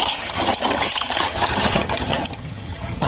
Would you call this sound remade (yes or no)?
yes